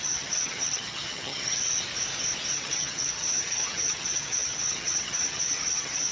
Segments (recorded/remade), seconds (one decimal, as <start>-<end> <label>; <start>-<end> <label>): 0.0-1.6 remade; 1.6-2.5 recorded; 2.5-6.1 remade